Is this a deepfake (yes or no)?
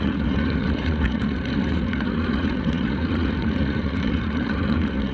yes